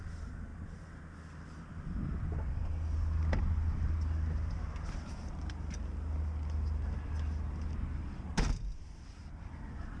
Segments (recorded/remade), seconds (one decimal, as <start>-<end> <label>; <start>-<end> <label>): 0.0-10.0 recorded